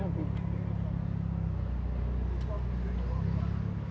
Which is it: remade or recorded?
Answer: recorded